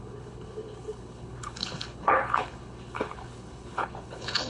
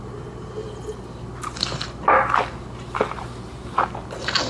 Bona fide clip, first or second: second